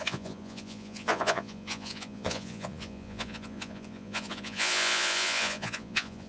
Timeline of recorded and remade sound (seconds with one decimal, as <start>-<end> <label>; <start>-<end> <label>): 0.0-6.3 remade

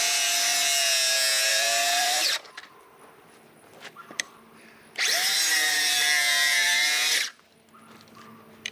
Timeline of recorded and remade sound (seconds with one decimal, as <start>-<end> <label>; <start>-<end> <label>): 0.0-0.5 remade; 0.5-1.5 recorded; 1.5-8.7 remade

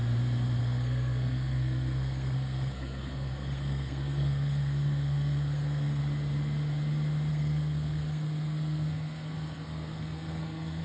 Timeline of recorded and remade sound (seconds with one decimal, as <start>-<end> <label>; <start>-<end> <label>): 0.0-0.6 recorded; 0.6-6.0 remade; 6.0-7.3 recorded; 7.3-10.8 remade

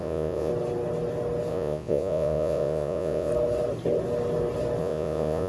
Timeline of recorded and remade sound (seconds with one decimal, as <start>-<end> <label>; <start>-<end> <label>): 0.0-0.5 remade; 0.5-1.5 recorded; 1.5-3.3 remade; 3.3-4.8 recorded; 4.8-5.5 remade

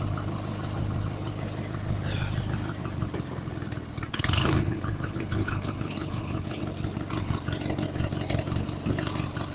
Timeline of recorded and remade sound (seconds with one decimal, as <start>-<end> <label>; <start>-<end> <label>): 0.0-4.1 recorded; 4.1-6.6 remade; 6.6-9.5 recorded